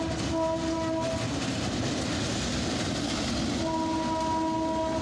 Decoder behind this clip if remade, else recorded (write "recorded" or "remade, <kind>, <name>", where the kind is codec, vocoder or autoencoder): recorded